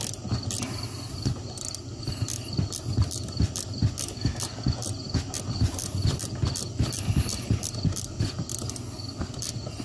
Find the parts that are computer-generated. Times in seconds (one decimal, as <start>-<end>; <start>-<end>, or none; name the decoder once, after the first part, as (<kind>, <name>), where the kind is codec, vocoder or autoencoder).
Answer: none